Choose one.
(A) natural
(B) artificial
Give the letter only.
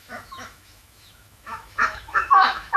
B